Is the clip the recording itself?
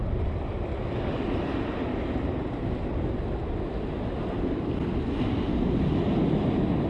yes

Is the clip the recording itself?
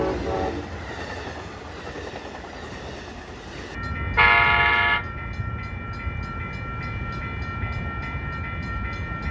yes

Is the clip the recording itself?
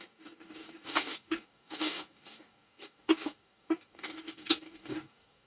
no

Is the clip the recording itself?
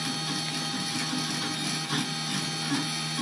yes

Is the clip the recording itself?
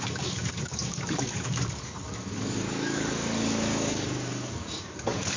no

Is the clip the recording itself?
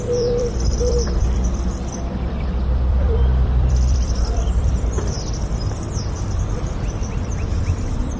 no